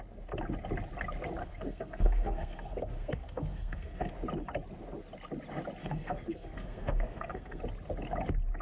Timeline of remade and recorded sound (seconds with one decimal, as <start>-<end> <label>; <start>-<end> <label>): 0.0-1.4 recorded; 1.4-4.1 remade; 4.1-5.8 recorded; 5.8-7.6 remade; 7.6-8.6 recorded